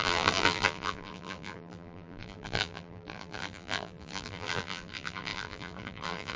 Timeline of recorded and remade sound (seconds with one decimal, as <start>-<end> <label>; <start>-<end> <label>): 0.0-6.4 remade